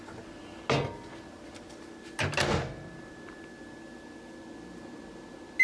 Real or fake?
real